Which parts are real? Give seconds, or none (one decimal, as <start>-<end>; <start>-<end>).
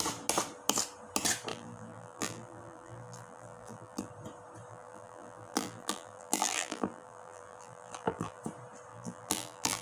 0.0-1.5; 4.1-4.7; 8.4-8.9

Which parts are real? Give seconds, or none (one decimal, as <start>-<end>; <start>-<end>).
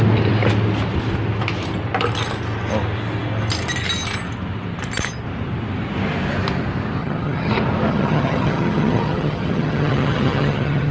0.0-7.0; 7.5-7.9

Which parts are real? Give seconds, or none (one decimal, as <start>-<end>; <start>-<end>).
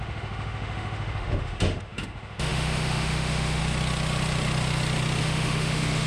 3.6-5.2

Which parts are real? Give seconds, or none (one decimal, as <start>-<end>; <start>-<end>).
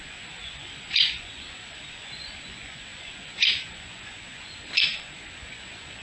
none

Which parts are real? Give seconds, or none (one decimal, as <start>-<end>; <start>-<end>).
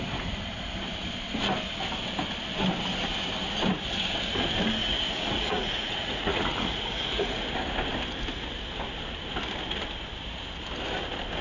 0.0-4.8; 7.4-11.4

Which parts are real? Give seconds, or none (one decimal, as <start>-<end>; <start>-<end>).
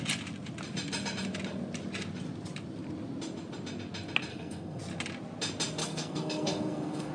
0.0-4.3; 4.8-5.8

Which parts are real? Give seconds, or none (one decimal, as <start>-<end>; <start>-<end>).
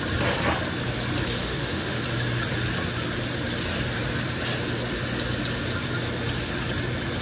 0.0-1.4; 2.0-7.2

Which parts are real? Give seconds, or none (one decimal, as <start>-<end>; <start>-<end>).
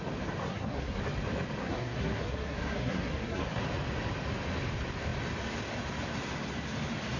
0.0-0.4; 1.0-1.6; 3.6-7.2